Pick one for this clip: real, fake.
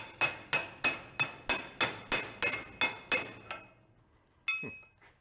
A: real